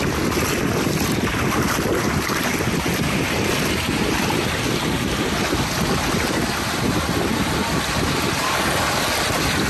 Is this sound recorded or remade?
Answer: recorded